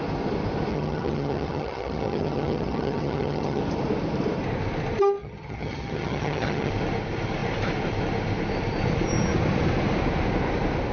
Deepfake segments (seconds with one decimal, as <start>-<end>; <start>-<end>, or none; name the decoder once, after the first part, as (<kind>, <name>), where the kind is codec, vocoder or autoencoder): 0.7-3.6 (vocoder, HiFi-GAN); 5.2-6.7